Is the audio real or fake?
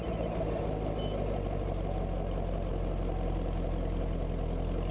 real